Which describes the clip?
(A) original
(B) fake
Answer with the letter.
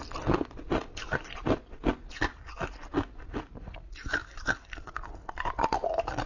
A